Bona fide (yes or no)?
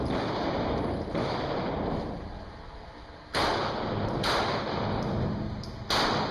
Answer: yes